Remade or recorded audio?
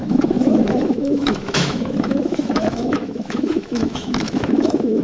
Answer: remade